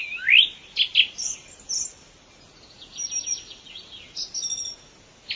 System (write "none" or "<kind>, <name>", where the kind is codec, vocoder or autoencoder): none